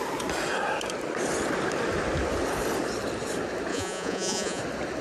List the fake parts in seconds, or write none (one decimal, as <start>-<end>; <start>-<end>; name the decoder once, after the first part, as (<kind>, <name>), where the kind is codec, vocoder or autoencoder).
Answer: 3.7-4.6 (vocoder, Vocos)